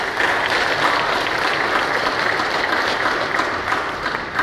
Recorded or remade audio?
recorded